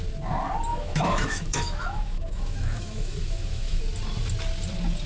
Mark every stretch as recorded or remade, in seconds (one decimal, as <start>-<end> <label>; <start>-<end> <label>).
0.0-0.7 recorded; 0.7-3.8 remade; 3.8-5.1 recorded